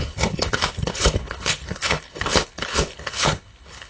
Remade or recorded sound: remade